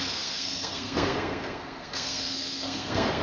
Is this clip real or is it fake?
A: fake